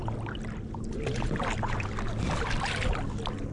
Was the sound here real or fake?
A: real